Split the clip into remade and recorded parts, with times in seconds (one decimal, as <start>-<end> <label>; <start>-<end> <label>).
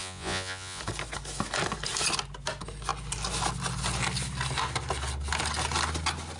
0.0-0.8 remade; 0.8-6.4 recorded